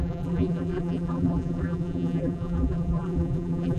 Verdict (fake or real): fake